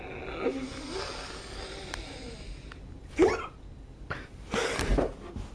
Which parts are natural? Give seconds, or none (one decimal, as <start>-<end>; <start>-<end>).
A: 0.0-5.5